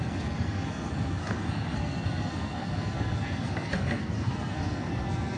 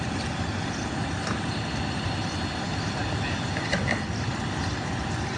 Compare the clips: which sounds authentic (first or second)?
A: second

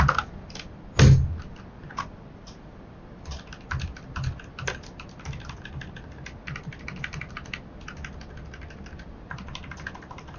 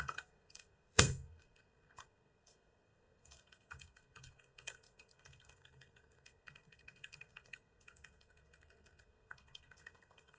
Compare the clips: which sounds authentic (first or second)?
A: first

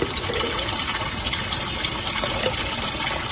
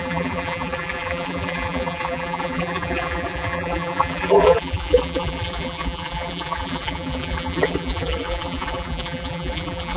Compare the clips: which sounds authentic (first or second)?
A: first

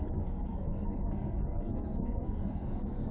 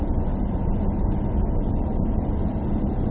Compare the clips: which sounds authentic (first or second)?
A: second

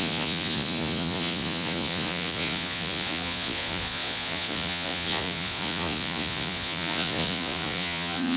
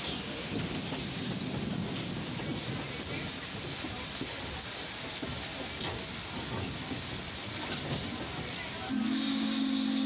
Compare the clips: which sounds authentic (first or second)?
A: second